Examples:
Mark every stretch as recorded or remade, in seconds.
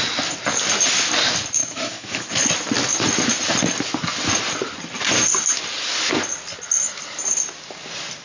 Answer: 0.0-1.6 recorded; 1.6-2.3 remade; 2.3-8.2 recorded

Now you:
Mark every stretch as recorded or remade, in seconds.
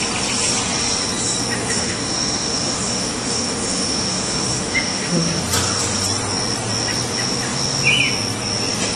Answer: 0.0-1.6 recorded; 1.6-5.4 remade; 5.4-9.0 recorded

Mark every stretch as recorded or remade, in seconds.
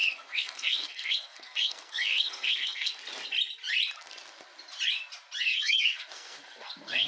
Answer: 0.0-2.9 remade; 2.9-5.4 recorded; 5.4-7.1 remade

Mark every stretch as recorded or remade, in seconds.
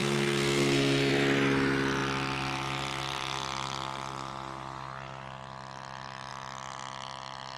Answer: 0.0-1.1 remade; 1.1-7.6 recorded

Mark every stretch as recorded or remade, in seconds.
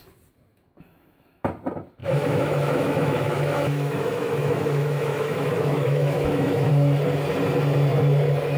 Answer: 0.0-0.5 recorded; 0.5-1.5 remade; 1.5-2.0 recorded; 2.0-6.7 remade; 6.7-8.6 recorded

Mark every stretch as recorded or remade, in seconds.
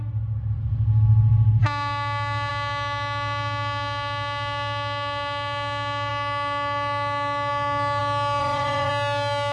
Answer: 0.0-8.4 recorded; 8.4-8.9 remade; 8.9-9.5 recorded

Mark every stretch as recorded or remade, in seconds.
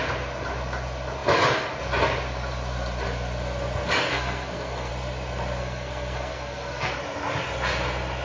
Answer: 0.0-4.1 recorded; 4.1-4.9 remade; 4.9-5.6 recorded; 5.6-6.9 remade; 6.9-8.2 recorded